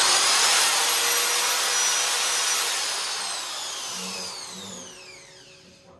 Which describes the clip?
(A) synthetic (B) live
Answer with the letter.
B